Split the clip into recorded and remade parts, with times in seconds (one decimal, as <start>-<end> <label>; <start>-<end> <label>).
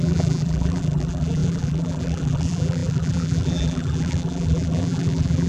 0.0-5.5 remade